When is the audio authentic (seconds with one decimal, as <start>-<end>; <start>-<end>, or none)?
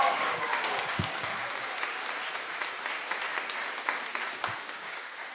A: 1.3-4.5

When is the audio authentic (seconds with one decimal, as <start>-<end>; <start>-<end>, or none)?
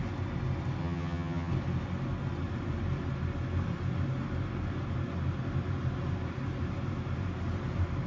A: 0.0-0.8; 1.5-8.1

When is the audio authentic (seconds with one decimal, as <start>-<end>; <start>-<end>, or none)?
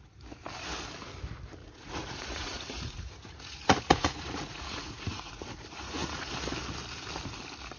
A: 0.0-1.6; 6.3-7.8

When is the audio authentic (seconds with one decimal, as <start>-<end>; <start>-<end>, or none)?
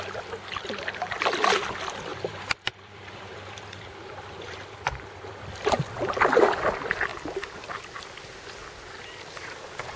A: 0.0-2.1; 5.4-10.0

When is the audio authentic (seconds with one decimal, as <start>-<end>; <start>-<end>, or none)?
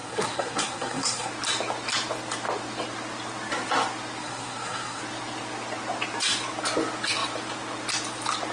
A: 1.3-4.2; 5.0-8.5